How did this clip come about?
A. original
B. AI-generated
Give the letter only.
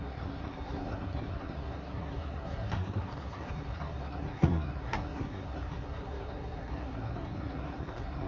B